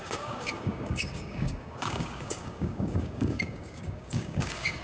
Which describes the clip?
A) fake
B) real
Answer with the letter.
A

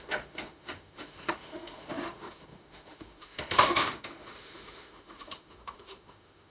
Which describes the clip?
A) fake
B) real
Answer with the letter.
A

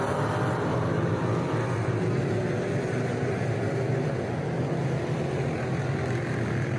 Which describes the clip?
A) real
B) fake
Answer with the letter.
A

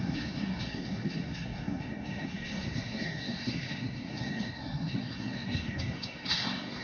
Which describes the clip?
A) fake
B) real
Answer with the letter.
A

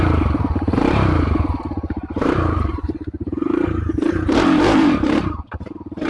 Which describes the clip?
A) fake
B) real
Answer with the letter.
A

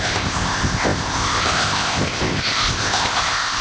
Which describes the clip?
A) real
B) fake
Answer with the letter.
B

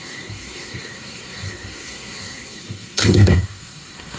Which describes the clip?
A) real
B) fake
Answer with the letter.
B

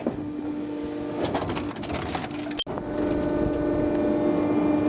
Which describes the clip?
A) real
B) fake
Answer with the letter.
A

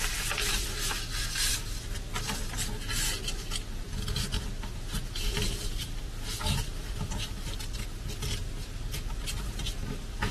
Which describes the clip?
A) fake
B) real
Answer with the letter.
B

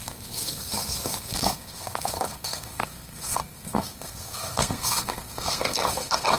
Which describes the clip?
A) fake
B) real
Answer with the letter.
A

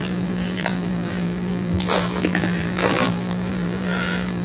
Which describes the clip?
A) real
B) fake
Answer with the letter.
B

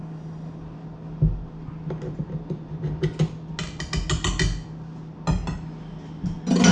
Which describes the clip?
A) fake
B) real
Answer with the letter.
B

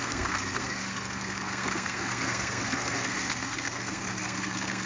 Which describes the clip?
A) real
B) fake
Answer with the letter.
B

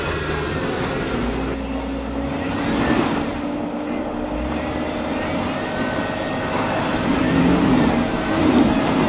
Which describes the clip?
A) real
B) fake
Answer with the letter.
A